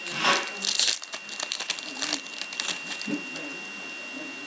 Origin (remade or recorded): recorded